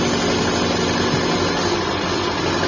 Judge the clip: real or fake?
real